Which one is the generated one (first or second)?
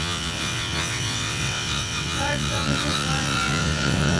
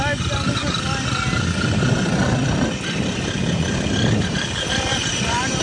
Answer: first